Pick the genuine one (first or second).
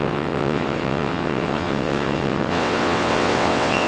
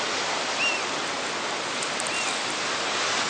second